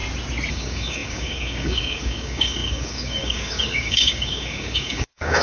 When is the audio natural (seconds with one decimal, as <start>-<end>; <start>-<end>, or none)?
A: 0.0-0.5